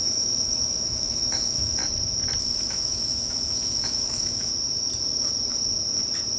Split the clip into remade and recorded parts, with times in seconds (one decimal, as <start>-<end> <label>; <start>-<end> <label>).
0.0-1.8 remade; 1.8-2.4 recorded; 2.4-4.5 remade; 4.5-6.4 recorded